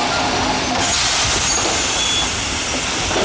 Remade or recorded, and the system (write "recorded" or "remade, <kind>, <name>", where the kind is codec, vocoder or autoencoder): recorded